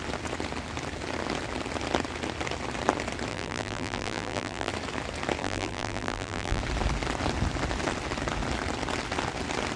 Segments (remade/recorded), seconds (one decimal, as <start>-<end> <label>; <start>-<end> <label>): 0.0-3.3 recorded; 3.3-4.7 remade; 4.7-5.4 recorded; 5.4-6.6 remade; 6.6-9.8 recorded